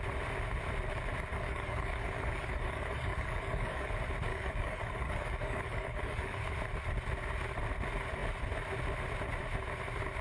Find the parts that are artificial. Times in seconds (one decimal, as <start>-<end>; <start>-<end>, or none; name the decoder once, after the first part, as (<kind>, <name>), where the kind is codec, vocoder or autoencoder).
1.3-3.9 (codec, DAC); 4.3-6.4